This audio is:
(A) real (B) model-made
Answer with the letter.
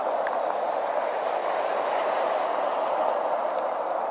A